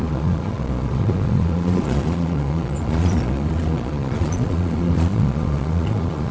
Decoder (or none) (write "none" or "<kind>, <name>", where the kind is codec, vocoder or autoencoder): vocoder, Vocos